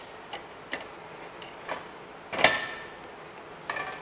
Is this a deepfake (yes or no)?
no